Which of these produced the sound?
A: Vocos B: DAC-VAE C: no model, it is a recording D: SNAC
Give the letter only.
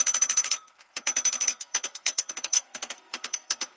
D